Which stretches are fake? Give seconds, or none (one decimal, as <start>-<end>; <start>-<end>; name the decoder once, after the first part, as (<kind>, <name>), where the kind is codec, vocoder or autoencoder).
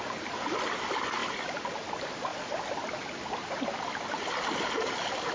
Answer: none